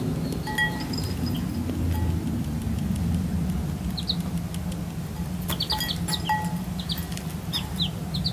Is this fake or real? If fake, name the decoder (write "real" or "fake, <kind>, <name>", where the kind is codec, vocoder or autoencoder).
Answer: real